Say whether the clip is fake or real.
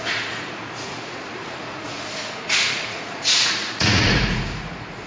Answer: fake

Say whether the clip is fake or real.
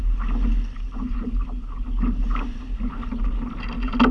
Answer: real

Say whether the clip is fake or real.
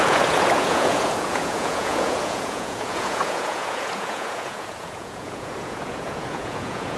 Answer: fake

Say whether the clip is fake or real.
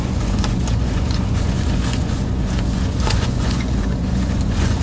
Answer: fake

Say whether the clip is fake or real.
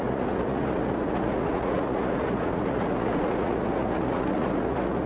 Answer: fake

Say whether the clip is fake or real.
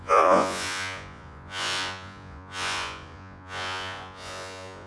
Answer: fake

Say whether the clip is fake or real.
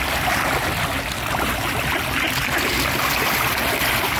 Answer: real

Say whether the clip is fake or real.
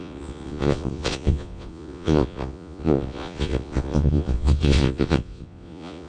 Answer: fake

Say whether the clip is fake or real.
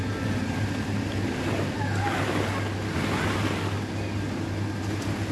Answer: real